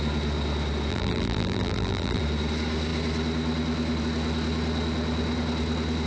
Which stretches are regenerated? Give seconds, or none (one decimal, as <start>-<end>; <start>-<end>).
0.9-2.2